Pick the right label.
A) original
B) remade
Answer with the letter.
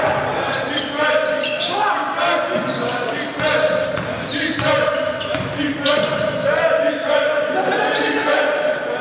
B